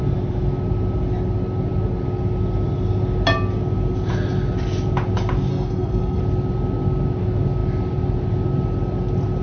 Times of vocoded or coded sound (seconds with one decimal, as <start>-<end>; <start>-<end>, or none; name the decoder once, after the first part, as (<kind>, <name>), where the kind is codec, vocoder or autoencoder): 5.5-6.2 (codec, SNAC)